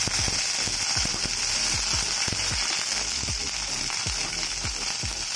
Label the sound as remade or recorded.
recorded